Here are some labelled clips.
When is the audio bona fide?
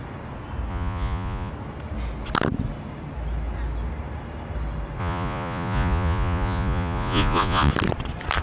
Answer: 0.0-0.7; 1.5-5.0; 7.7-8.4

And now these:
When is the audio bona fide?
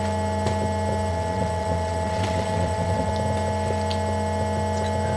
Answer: 0.0-1.1; 3.1-5.2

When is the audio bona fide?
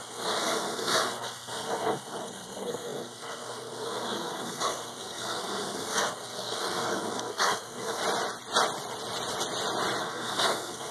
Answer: 8.0-10.0